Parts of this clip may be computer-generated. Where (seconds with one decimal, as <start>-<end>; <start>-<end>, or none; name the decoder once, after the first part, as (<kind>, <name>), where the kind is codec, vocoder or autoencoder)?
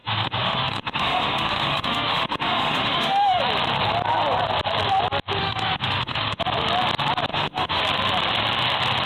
0.0-3.4 (autoencoder, DAC-VAE); 5.4-6.4; 7.3-7.8